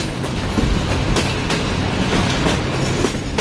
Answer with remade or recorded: recorded